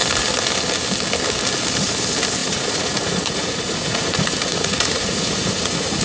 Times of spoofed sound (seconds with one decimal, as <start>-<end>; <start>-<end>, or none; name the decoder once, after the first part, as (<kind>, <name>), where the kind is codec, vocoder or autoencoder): 2.4-6.0 (vocoder, Vocos)